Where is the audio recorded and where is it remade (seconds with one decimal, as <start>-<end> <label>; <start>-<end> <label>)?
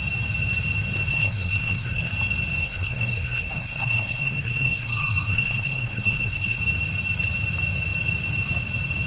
0.0-1.1 recorded; 1.1-2.1 remade; 2.1-2.6 recorded; 2.6-6.6 remade; 6.6-9.1 recorded